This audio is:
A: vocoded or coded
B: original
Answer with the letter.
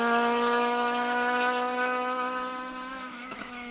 A